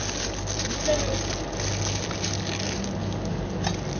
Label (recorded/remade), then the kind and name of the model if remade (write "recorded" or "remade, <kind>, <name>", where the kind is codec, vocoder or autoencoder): recorded